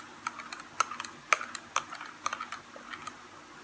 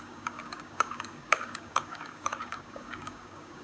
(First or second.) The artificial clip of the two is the second